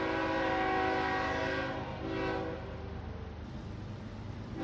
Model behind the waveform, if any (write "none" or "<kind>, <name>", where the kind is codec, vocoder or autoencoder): none